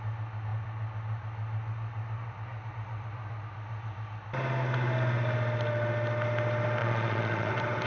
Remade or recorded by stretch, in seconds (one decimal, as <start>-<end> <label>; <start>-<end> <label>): 0.0-6.8 recorded; 6.8-7.5 remade; 7.5-7.9 recorded